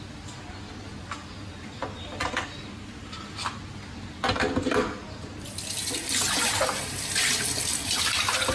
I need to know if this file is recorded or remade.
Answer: recorded